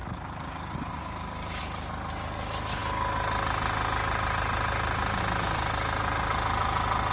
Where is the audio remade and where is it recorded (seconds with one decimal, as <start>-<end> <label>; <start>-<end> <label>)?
0.0-1.6 remade; 1.6-7.1 recorded